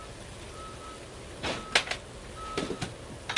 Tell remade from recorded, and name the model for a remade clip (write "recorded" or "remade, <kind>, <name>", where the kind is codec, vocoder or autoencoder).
recorded